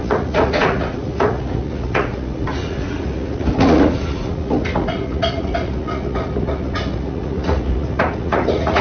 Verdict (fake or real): fake